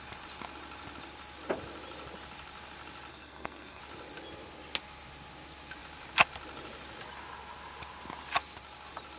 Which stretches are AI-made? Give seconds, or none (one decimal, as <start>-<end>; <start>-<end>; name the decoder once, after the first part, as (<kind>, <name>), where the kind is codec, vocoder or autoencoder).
3.1-3.8 (codec, SNAC)